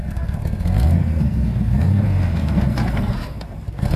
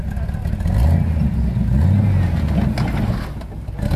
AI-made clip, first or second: first